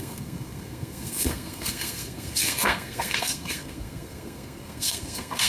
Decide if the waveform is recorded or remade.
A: remade